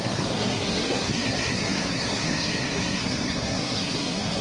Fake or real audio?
fake